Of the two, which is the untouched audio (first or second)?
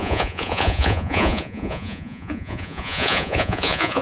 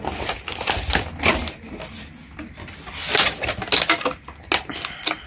second